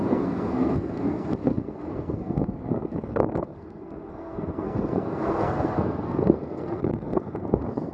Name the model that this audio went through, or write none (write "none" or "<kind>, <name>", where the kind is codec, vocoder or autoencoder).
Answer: codec, SNAC